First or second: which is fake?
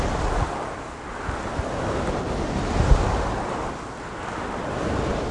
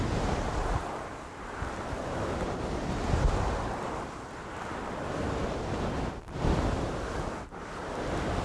second